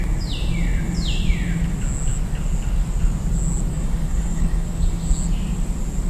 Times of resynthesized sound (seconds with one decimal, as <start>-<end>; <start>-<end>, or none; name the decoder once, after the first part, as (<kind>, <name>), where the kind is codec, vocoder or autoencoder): 3.7-5.1 (codec, DAC)